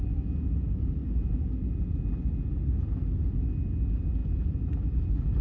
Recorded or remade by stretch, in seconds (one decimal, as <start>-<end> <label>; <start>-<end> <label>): 0.0-5.4 recorded